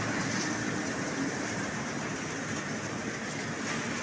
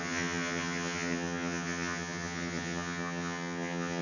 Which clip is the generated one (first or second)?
second